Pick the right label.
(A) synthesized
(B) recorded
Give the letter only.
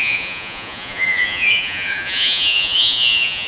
A